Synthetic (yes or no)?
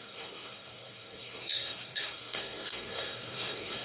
yes